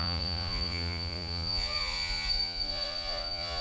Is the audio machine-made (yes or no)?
yes